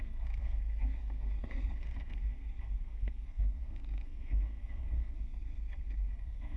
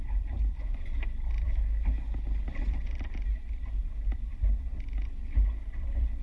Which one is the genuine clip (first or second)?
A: second